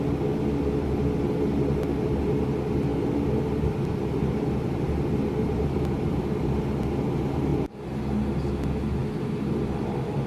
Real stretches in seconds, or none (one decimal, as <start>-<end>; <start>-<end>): 0.0-2.9; 6.5-9.0